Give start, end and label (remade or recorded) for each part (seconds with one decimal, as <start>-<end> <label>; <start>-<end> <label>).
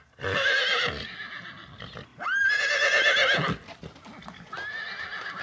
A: 0.0-5.4 recorded